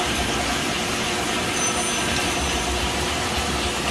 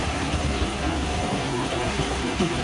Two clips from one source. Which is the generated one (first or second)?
second